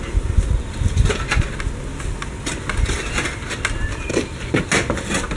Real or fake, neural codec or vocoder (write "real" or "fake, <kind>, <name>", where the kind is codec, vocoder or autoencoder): real